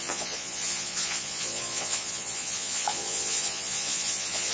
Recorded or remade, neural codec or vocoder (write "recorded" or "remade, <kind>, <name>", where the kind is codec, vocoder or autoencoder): remade, vocoder, Vocos